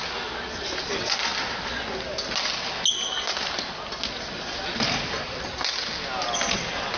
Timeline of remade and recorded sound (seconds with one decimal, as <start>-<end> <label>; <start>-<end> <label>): 0.0-7.0 recorded